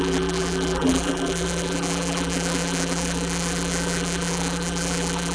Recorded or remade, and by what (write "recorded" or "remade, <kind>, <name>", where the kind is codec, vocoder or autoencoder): remade, vocoder, BigVGAN v2